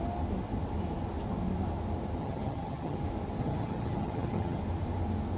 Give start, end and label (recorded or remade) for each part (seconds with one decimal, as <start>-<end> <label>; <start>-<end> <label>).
0.0-2.2 recorded; 2.2-3.0 remade; 3.0-3.4 recorded; 3.4-4.6 remade; 4.6-5.4 recorded